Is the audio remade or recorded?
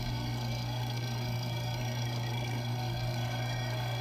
remade